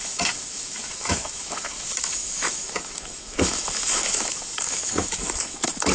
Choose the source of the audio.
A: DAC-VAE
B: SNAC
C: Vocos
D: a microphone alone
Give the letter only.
A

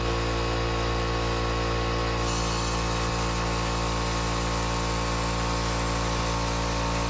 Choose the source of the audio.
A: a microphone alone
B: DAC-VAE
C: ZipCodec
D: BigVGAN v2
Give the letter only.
A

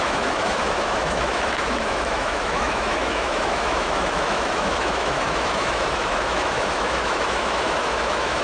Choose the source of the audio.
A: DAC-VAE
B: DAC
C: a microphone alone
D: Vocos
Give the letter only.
A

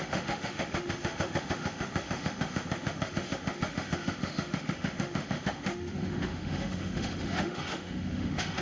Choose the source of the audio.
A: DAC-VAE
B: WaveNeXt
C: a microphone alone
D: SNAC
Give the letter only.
A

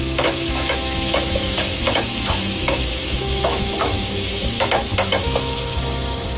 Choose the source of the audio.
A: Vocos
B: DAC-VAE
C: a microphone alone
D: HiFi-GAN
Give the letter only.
B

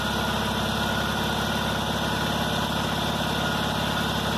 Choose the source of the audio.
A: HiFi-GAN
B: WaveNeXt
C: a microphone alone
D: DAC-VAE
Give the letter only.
C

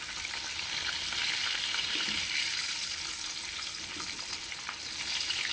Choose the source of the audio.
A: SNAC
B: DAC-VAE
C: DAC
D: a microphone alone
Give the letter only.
D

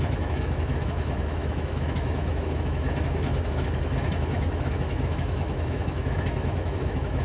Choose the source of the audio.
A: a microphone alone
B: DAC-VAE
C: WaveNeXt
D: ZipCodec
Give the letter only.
B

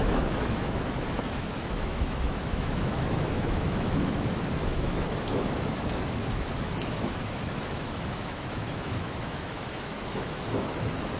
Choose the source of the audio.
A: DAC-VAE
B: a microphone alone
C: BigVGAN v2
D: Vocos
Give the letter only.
A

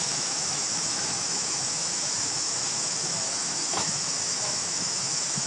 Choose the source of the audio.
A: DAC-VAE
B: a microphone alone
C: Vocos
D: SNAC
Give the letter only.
A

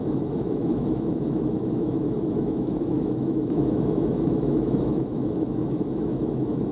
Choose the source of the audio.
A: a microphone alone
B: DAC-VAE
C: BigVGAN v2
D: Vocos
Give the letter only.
B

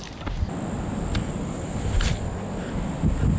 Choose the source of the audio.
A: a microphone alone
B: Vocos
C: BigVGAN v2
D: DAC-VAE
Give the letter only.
A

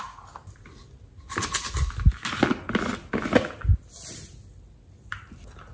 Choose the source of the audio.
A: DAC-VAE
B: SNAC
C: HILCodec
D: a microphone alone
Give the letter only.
D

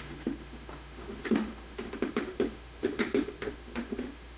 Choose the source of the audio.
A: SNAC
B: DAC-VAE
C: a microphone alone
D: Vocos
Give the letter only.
B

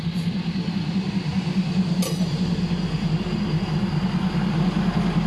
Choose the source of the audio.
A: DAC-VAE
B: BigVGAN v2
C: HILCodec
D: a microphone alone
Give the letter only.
D